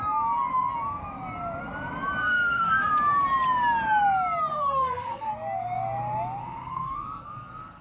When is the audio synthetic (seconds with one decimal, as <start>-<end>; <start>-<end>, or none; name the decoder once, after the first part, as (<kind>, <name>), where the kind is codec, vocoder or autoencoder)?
2.2-2.9 (codec, SNAC); 4.5-5.3; 6.4-7.8